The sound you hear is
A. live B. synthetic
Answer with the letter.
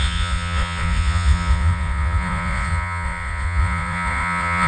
B